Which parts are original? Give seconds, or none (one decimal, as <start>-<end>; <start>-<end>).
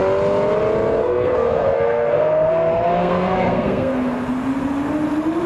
0.0-1.0; 3.9-5.5